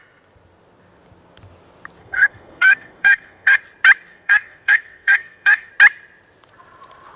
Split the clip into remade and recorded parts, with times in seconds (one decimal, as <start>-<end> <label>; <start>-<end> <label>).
0.0-2.0 recorded; 2.0-3.6 remade; 3.6-4.1 recorded; 4.1-5.7 remade; 5.7-7.2 recorded